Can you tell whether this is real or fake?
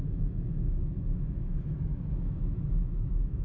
fake